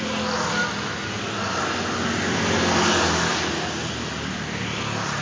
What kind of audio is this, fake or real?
real